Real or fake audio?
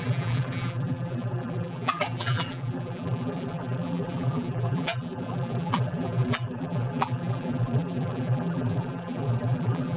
fake